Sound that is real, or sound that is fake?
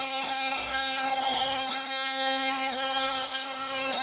fake